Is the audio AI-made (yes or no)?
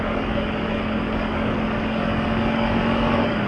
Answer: yes